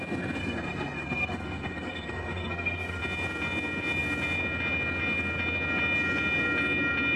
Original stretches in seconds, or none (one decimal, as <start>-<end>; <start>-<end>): 0.0-0.4; 3.0-7.2